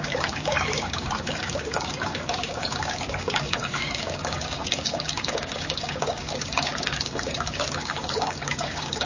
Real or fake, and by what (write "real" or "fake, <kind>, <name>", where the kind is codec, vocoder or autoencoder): fake, codec, DAC